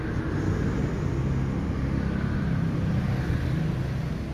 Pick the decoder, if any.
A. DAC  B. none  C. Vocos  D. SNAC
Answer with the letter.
B